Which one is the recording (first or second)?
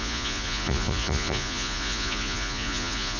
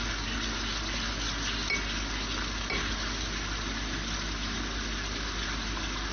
second